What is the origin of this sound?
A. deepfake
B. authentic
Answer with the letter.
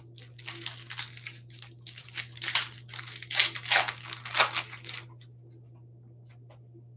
B